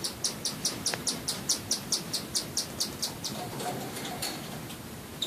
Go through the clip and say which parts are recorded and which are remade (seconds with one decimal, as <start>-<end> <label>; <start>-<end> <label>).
0.0-5.3 remade